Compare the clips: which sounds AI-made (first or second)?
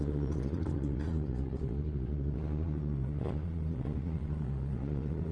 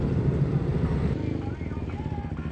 first